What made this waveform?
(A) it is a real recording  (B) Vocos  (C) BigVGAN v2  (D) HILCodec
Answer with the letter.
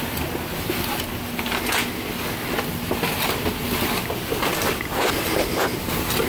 C